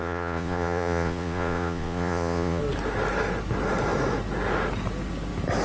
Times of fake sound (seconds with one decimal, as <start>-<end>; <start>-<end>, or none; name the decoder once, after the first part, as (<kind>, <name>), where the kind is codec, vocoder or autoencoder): 0.0-2.6 (vocoder, Vocos)